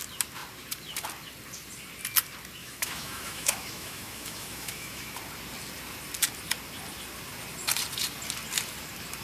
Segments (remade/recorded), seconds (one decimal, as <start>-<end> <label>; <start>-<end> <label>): 0.0-2.6 recorded; 2.6-5.1 remade; 5.1-9.2 recorded